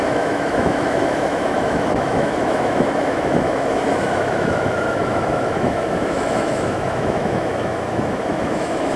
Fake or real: fake